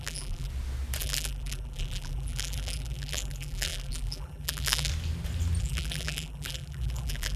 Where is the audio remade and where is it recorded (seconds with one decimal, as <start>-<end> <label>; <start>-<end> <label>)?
0.0-0.5 remade; 0.5-1.0 recorded; 1.0-4.9 remade; 4.9-5.6 recorded; 5.6-7.4 remade